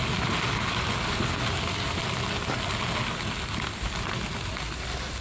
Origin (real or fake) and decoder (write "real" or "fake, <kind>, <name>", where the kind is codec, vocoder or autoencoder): real